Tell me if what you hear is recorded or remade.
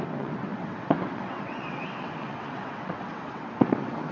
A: remade